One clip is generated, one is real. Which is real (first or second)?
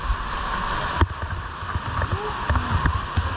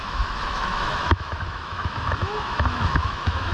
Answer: first